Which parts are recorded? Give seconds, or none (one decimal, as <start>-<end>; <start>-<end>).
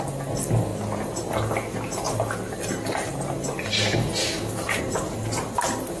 0.0-4.2; 4.8-6.0